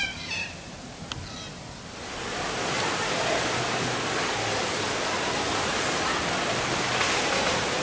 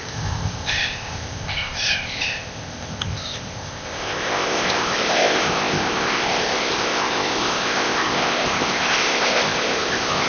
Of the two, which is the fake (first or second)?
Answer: second